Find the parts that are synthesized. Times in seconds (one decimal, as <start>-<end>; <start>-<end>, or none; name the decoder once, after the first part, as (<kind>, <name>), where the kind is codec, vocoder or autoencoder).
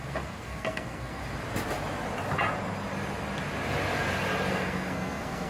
0.0-1.2 (codec, SNAC); 4.5-5.5